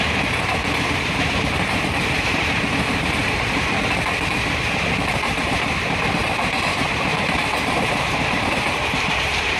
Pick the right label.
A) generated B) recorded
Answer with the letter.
A